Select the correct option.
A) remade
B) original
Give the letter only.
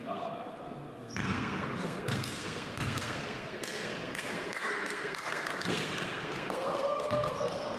A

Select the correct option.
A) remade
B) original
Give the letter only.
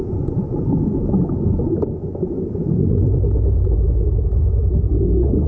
B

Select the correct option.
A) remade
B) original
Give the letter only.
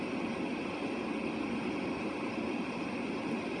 B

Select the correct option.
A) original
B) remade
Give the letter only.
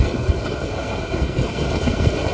B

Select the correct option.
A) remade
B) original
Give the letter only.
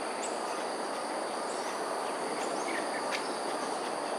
B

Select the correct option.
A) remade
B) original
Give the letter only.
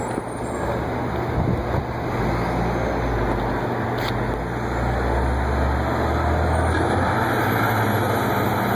B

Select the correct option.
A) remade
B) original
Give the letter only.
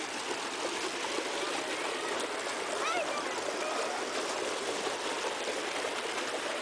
B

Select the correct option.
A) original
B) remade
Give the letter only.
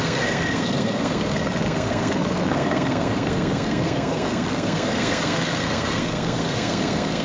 B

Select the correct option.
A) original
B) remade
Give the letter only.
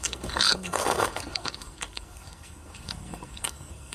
B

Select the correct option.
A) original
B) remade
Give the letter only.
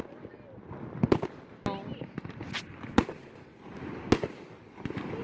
A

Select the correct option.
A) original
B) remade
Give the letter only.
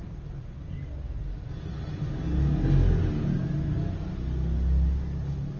A